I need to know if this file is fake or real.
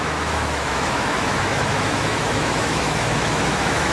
fake